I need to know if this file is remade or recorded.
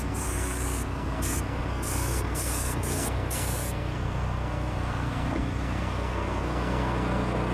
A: remade